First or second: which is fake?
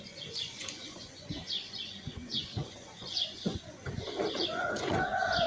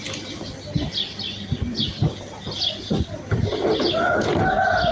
first